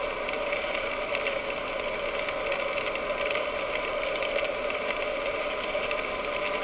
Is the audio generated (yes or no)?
no